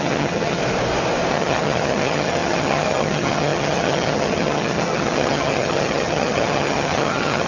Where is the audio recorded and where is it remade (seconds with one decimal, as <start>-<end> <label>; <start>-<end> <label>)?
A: 0.0-0.6 remade; 0.6-1.3 recorded; 1.3-7.5 remade